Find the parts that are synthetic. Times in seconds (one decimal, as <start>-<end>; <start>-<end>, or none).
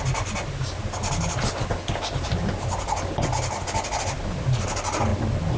none